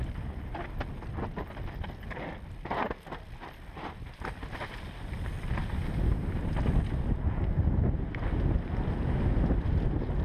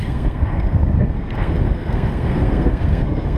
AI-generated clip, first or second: second